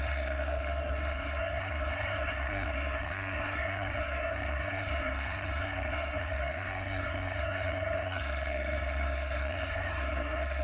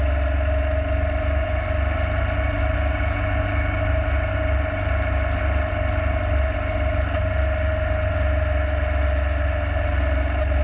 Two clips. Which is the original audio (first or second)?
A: second